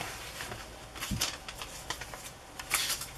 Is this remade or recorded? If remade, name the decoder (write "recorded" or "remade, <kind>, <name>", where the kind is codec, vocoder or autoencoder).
recorded